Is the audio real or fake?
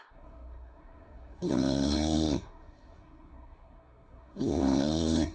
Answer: fake